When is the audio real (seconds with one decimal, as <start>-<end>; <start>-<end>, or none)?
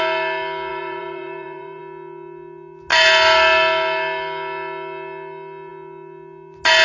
0.0-0.7; 1.8-6.8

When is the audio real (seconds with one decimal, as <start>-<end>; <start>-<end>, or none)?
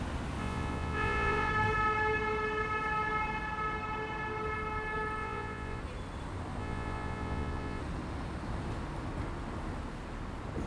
0.0-0.4; 1.5-5.2; 5.8-6.6; 7.8-10.7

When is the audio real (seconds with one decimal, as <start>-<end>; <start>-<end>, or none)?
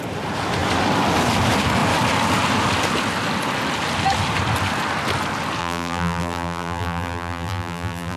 0.0-5.6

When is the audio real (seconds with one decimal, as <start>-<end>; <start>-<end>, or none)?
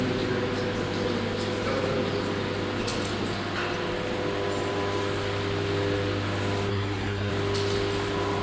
0.0-6.7; 7.3-8.4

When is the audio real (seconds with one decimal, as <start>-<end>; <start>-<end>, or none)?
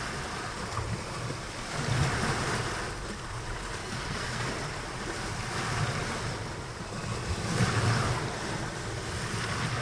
0.0-3.8; 4.5-9.8